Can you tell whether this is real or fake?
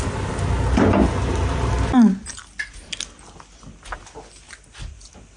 real